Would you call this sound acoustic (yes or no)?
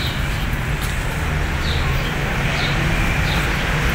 yes